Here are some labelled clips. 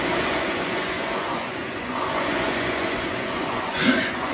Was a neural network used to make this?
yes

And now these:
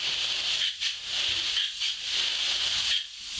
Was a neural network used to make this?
no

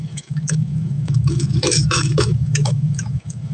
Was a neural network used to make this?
yes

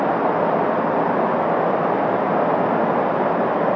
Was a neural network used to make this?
no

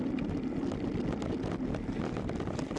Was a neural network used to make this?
no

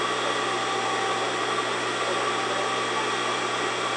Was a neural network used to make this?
no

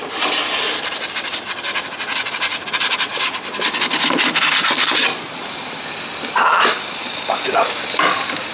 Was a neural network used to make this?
yes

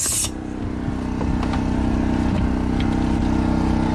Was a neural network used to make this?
no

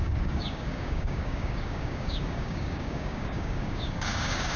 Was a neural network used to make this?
yes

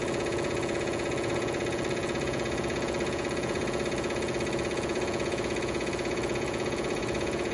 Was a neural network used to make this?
yes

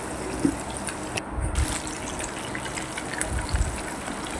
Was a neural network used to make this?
no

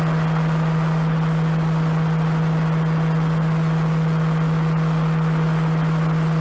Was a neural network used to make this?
no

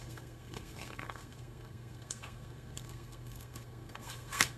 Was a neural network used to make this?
yes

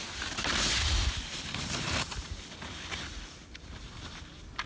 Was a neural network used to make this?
no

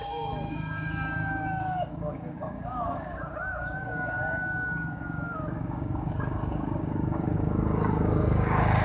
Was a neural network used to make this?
yes